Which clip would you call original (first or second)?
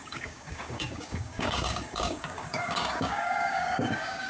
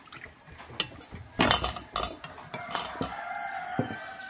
second